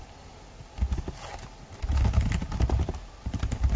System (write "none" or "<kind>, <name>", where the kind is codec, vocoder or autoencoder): none